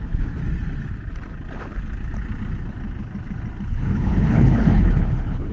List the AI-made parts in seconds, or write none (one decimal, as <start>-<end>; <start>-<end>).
0.0-0.4; 3.7-5.5